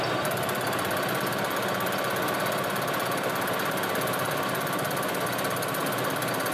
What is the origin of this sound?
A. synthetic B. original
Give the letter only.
B